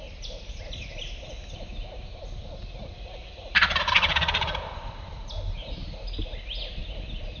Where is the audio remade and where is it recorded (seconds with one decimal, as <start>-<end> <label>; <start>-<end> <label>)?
0.0-3.2 recorded; 3.2-4.7 remade; 4.7-6.8 recorded; 6.8-7.4 remade